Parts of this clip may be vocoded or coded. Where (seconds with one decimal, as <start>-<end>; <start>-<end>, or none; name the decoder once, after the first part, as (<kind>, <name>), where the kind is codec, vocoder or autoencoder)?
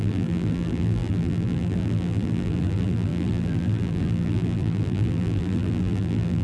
0.0-6.4 (vocoder, BigVGAN v2)